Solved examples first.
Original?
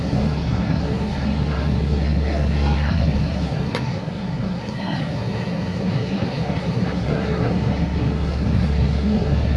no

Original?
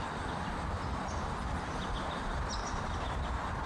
yes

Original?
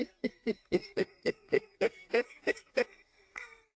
no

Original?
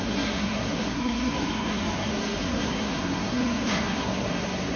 no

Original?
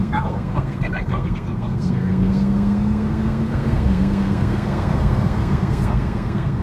no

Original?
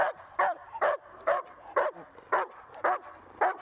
yes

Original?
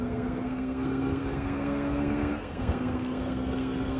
no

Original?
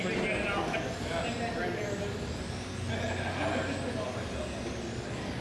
yes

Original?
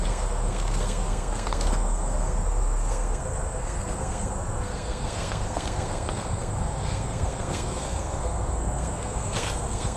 no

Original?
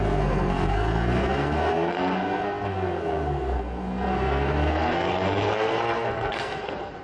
no